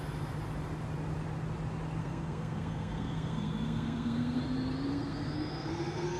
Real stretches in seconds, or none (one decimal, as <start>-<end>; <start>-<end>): 0.0-2.0; 4.4-4.9